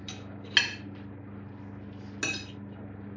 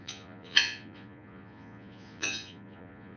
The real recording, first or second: first